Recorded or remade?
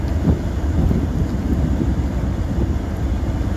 recorded